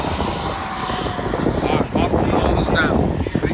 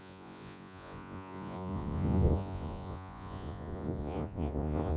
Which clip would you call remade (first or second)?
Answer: second